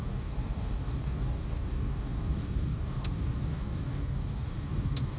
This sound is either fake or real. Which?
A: fake